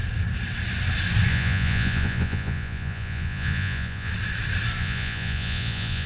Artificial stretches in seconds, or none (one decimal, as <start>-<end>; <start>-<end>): 1.3-4.1; 4.8-6.1